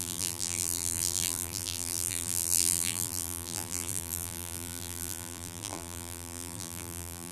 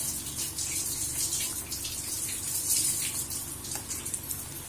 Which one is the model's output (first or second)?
first